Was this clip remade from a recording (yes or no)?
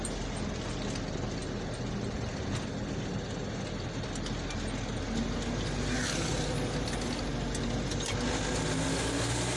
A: no